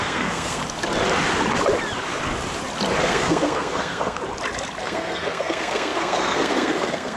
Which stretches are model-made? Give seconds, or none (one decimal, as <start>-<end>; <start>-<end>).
0.0-0.6; 3.0-4.2; 4.8-7.2